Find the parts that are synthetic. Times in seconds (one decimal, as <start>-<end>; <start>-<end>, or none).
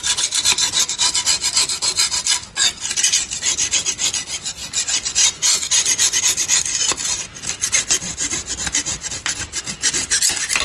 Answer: 4.6-6.2